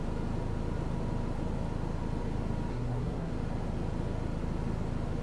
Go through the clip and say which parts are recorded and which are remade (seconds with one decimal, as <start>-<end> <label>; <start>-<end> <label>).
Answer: 0.0-2.7 recorded; 2.7-3.3 remade; 3.3-5.2 recorded

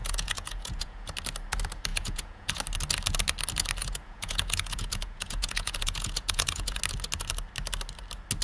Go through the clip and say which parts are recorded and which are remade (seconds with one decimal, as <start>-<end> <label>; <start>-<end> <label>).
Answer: 0.0-1.1 remade; 1.1-1.9 recorded; 1.9-2.6 remade; 2.6-3.8 recorded; 3.8-6.8 remade; 6.8-8.4 recorded

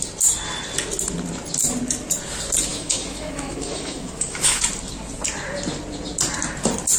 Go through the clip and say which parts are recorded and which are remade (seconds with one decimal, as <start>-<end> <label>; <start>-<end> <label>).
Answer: 0.0-2.7 recorded; 2.7-4.6 remade; 4.6-7.0 recorded

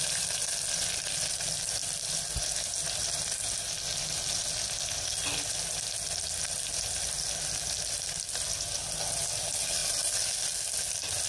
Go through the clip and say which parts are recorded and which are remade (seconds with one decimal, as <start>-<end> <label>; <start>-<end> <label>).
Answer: 0.0-11.3 recorded

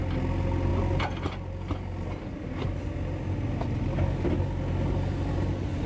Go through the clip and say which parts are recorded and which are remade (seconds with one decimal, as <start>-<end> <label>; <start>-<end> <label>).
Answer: 0.0-5.9 recorded